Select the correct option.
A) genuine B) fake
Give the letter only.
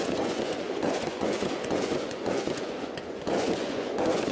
B